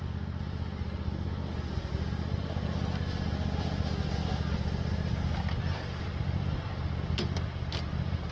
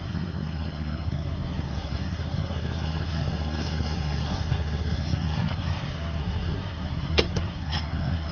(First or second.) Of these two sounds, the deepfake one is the second